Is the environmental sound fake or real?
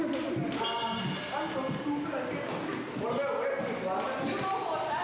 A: real